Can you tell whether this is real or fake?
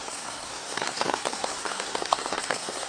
fake